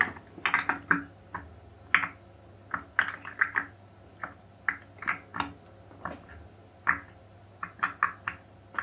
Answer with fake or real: real